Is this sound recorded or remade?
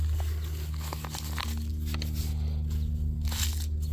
recorded